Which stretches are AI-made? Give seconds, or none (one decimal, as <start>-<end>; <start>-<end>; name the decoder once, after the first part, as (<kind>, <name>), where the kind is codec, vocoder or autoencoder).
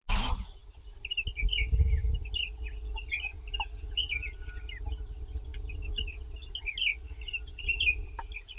none